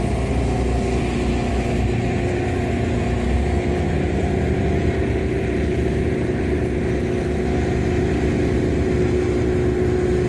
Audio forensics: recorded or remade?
recorded